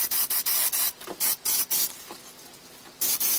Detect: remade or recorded recorded